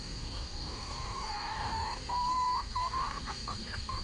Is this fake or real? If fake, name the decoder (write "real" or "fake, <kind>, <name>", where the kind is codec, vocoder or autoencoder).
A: fake, codec, DAC